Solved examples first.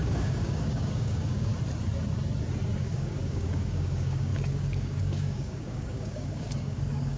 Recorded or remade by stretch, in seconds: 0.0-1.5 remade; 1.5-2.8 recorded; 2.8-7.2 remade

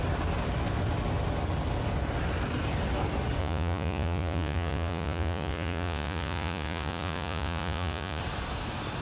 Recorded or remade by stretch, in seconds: 0.0-3.4 recorded; 3.4-8.2 remade; 8.2-9.0 recorded

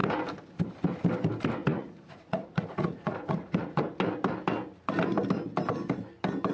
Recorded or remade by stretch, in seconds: 0.0-1.6 recorded; 1.6-3.8 remade; 3.8-6.5 recorded

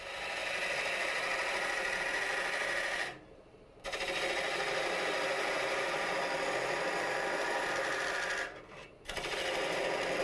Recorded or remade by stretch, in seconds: 0.0-10.2 recorded